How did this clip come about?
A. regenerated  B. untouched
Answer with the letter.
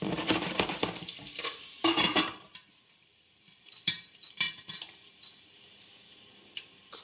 A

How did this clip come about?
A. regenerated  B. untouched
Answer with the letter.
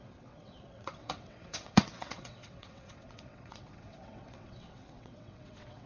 A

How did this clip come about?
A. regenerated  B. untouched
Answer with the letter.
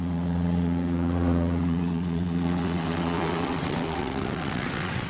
A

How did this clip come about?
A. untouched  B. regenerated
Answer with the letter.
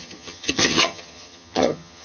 B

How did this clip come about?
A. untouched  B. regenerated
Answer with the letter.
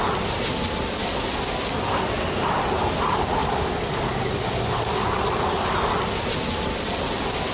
A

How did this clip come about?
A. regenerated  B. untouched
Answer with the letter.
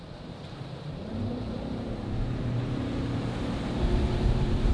A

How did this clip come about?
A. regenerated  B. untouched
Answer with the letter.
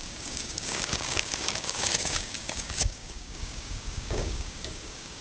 A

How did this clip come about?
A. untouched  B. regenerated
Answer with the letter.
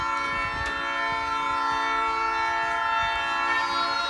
A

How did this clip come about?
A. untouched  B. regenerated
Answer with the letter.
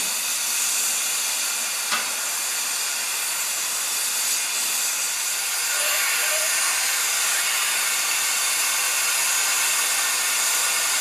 A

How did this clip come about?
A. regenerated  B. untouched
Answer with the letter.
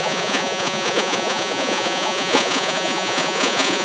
A